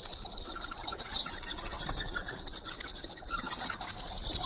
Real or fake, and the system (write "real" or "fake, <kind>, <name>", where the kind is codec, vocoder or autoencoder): real